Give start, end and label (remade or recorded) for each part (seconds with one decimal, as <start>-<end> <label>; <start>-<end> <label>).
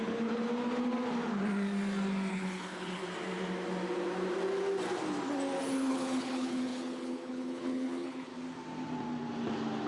0.0-0.5 remade; 0.5-2.3 recorded; 2.3-3.0 remade; 3.0-5.6 recorded; 5.6-8.3 remade; 8.3-9.9 recorded